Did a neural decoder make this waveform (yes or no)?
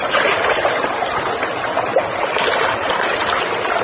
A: no